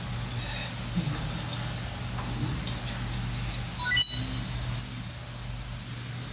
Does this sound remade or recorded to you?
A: recorded